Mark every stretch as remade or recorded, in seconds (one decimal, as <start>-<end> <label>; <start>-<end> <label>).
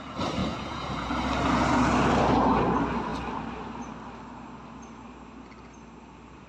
0.0-0.4 recorded; 0.4-1.1 remade; 1.1-6.5 recorded